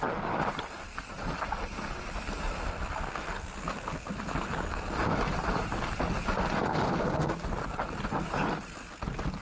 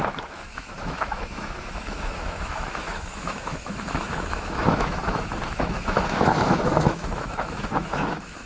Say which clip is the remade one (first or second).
second